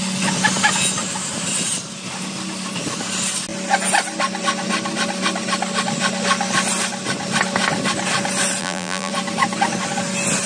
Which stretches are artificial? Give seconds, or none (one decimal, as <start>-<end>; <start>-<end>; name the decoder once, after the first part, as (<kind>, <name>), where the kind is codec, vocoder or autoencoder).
8.6-9.1 (vocoder, BigVGAN v2)